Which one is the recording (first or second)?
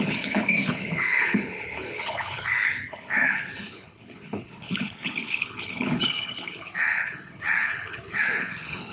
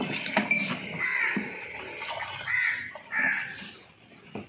second